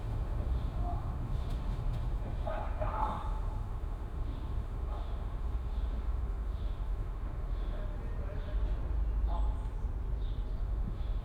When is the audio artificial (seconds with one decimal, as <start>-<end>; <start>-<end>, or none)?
0.0-7.8; 10.6-11.2